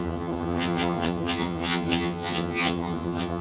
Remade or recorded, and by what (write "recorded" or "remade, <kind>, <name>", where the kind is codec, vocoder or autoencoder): remade, vocoder, HiFi-GAN